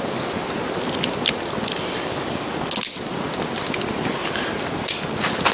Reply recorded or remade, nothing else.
recorded